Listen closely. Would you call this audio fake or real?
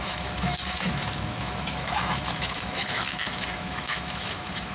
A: fake